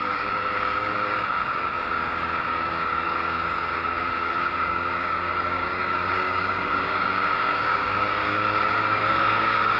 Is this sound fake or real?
fake